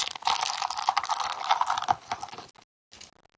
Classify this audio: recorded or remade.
recorded